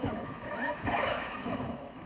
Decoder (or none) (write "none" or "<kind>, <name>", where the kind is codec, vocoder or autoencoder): autoencoder, DAC-VAE